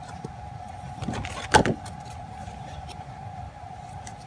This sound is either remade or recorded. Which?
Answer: remade